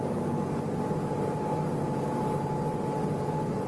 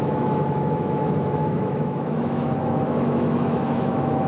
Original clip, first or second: first